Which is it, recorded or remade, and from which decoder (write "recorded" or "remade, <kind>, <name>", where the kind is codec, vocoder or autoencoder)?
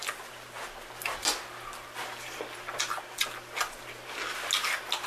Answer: recorded